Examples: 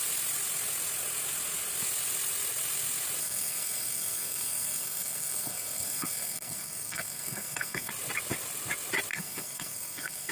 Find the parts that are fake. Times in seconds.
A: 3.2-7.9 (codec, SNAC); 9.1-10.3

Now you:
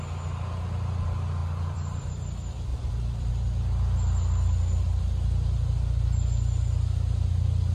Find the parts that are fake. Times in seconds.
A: 1.4-2.1 (vocoder, BigVGAN v2); 2.7-3.3

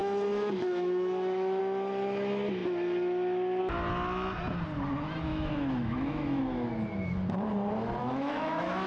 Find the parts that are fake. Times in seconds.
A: 0.0-1.6 (autoencoder, DAC-VAE); 5.3-6.4; 8.0-8.9

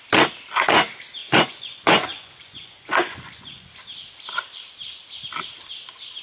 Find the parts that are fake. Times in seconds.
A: 1.2-3.7 (vocoder, Vocos)

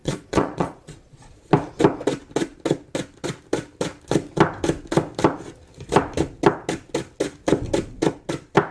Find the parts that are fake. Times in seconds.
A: 0.0-1.5 (vocoder, Vocos)

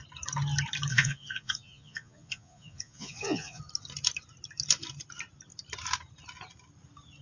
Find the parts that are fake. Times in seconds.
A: 0.9-3.6 (vocoder, Vocos)

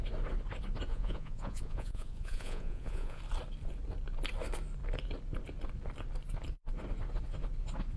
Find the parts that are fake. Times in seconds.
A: 0.9-3.2 (vocoder, Vocos)